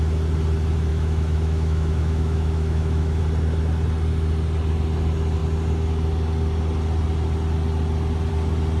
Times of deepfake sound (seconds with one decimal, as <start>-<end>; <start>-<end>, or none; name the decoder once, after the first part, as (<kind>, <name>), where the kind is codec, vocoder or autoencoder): 0.9-3.2 (autoencoder, DAC-VAE)